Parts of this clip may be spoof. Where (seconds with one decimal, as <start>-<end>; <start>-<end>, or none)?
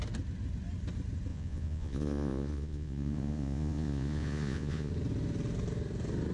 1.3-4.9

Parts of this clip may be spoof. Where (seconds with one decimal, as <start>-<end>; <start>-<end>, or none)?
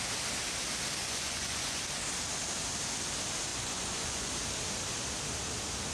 1.0-1.8; 3.5-4.3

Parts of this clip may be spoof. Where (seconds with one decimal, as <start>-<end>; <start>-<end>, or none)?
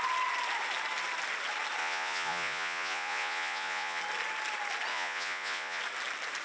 1.8-4.0; 4.9-5.8